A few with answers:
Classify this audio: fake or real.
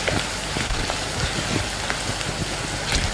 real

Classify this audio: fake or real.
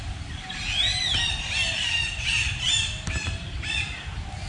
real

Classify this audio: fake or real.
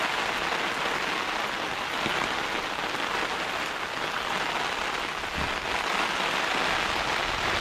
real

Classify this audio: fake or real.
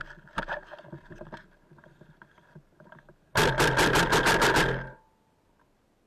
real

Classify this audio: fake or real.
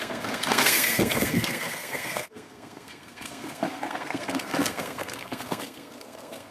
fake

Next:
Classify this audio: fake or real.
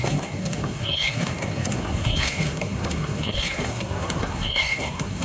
fake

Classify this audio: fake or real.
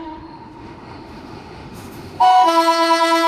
fake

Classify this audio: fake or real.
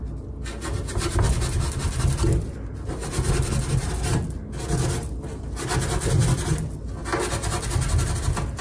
real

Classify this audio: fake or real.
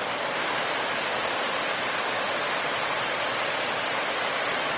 real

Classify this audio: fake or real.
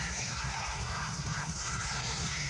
fake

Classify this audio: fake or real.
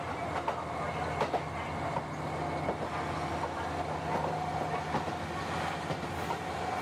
real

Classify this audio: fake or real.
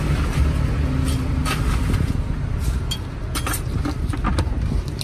real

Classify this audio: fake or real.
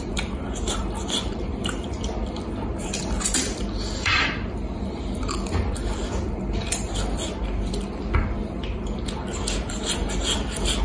fake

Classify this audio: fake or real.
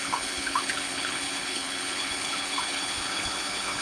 fake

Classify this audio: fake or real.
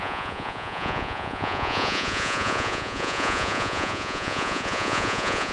fake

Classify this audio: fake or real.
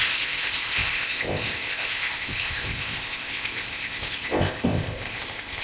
fake